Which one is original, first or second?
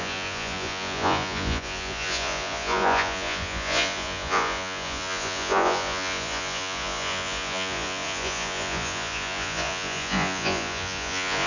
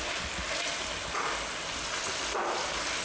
second